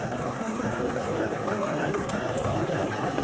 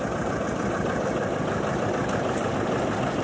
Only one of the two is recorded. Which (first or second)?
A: second